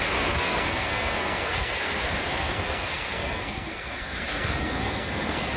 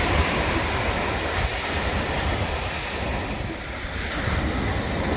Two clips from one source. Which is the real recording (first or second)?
second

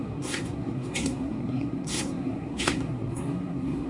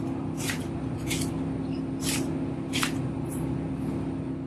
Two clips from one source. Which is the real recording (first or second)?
second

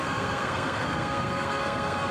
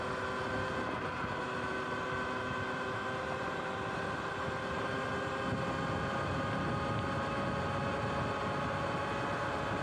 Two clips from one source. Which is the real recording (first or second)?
second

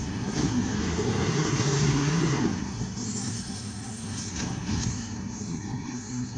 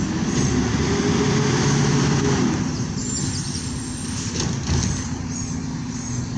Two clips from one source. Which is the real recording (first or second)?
second